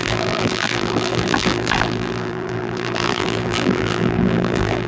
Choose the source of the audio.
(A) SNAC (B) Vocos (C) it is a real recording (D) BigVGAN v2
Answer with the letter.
D